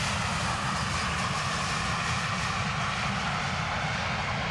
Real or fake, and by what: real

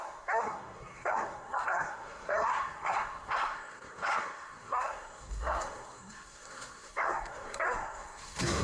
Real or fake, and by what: fake, codec, SNAC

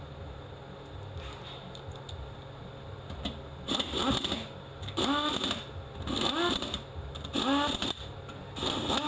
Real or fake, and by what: real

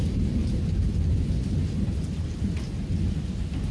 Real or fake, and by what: real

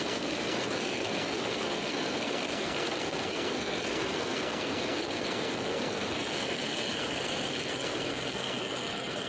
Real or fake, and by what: fake, codec, SNAC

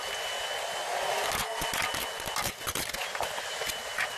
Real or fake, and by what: real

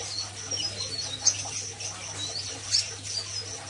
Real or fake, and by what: real